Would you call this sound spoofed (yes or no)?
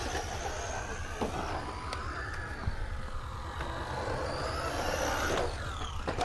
no